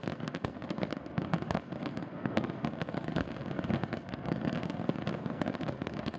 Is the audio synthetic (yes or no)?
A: yes